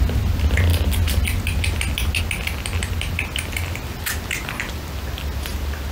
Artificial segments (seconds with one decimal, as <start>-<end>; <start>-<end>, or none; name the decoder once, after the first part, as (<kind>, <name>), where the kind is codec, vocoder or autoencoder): none

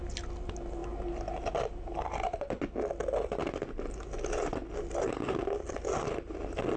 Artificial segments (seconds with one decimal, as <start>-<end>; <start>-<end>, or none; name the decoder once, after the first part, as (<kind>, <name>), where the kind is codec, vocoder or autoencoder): none

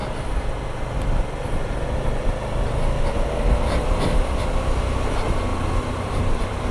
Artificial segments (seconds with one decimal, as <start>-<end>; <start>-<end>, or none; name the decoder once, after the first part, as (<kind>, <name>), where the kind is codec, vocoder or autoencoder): 5.5-6.7 (vocoder, BigVGAN v2)

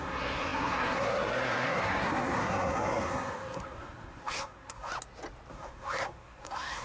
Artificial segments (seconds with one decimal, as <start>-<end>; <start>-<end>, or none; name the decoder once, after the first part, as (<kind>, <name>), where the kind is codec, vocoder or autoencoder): 0.0-4.9 (codec, SNAC); 5.5-6.8

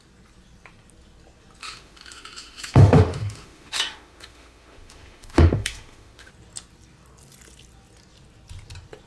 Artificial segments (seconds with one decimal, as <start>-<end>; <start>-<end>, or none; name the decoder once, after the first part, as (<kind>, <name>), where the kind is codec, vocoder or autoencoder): 1.6-6.3 (autoencoder, DAC-VAE)